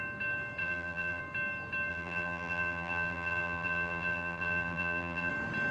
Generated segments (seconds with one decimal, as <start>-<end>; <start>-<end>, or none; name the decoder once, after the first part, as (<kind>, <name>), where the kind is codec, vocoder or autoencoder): 0.6-1.2 (vocoder, BigVGAN v2); 1.9-5.3